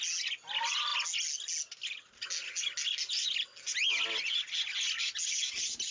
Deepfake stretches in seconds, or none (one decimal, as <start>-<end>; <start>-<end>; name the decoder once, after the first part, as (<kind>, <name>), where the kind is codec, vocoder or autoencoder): none